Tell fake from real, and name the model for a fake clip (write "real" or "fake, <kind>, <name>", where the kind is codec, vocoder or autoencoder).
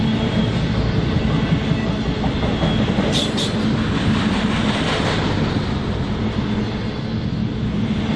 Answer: real